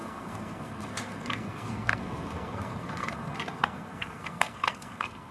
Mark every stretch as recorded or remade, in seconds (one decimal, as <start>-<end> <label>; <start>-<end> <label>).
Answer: 0.0-5.3 remade